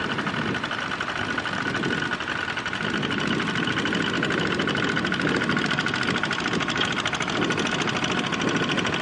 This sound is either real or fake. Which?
real